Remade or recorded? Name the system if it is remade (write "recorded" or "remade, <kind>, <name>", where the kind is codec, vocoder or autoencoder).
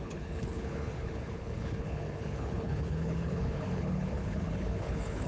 remade, codec, HILCodec